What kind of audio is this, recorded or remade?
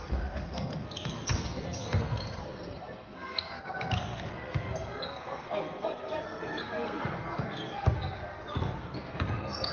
remade